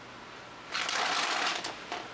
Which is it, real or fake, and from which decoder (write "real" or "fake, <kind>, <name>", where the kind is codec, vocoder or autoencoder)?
real